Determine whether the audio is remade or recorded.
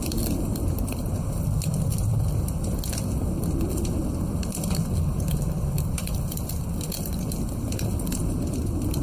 recorded